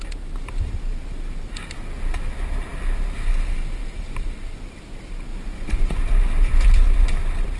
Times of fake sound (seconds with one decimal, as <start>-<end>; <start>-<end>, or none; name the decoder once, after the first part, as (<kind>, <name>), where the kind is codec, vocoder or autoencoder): 5.3-6.0 (vocoder, Vocos)

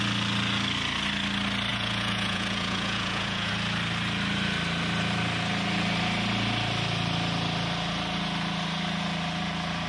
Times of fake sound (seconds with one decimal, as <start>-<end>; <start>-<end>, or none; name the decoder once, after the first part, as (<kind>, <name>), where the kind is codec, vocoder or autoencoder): 1.7-3.5 (vocoder, Vocos)

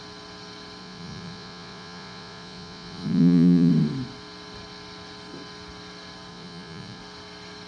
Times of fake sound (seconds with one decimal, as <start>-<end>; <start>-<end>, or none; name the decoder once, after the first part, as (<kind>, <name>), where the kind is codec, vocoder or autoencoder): 0.8-3.7 (vocoder, Vocos); 6.3-7.0

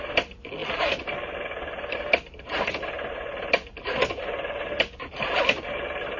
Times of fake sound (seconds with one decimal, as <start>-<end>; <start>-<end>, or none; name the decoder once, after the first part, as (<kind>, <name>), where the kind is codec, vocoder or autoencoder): none

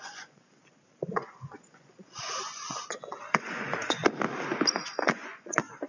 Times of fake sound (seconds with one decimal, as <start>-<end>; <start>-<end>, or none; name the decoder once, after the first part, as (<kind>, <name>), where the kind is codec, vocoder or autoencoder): 0.0-0.6 (vocoder, Vocos); 1.1-4.0; 5.0-5.9

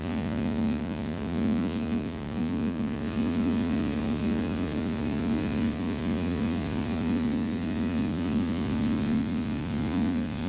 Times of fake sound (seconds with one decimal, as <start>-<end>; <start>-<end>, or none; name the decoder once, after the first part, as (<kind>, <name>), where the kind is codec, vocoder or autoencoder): 0.0-10.5 (vocoder, Vocos)

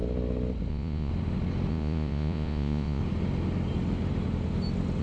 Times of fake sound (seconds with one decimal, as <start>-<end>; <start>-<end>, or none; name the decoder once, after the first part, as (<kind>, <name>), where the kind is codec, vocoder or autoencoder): 0.7-1.1 (vocoder, Vocos); 1.7-3.0

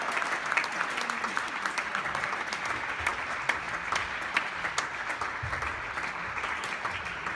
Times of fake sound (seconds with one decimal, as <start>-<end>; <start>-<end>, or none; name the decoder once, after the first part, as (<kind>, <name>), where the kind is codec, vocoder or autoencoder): none